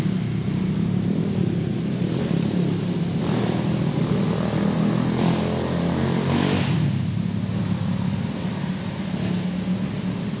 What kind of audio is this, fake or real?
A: real